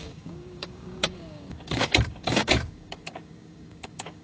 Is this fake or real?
fake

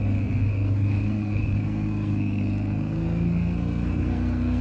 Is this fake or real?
fake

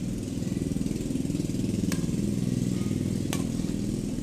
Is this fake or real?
real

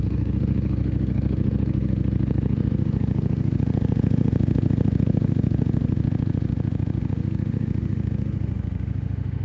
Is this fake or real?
fake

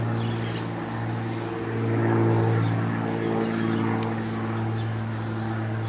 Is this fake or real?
real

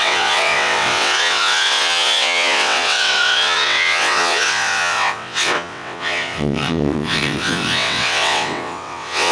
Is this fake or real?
fake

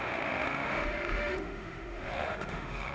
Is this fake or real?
fake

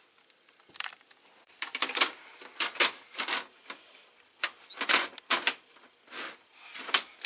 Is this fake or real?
real